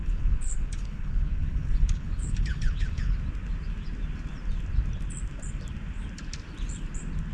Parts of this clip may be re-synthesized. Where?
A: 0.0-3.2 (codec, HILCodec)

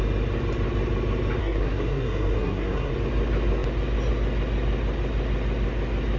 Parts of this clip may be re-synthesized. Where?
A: 1.4-2.9 (codec, SNAC)